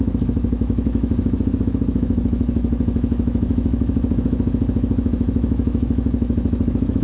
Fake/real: fake